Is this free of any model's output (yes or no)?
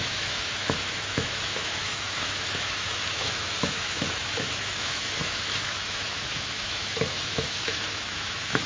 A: no